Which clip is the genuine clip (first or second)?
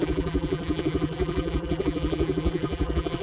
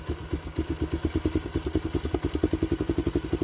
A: second